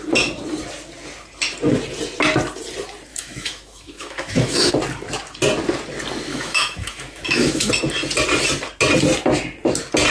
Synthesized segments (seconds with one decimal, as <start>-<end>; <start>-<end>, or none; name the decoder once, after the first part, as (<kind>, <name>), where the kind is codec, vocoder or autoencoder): 3.1-4.7 (autoencoder, DAC-VAE); 6.3-7.7